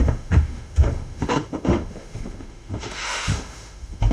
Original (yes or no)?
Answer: no